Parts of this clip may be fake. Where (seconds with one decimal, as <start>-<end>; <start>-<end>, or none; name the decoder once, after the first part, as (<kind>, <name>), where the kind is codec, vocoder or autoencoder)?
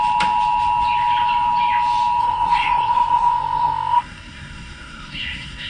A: 2.2-5.7 (codec, SNAC)